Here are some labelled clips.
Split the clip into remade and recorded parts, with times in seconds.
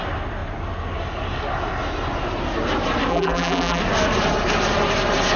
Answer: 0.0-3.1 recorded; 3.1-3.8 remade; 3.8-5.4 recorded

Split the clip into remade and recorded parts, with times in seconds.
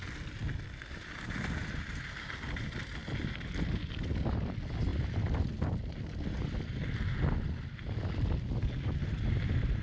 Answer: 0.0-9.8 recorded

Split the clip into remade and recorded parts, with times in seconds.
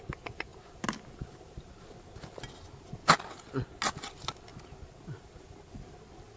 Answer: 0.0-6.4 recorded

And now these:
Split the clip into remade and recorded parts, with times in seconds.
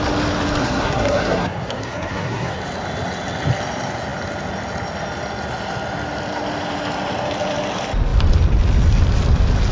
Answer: 0.0-0.6 recorded; 0.6-2.6 remade; 2.6-9.7 recorded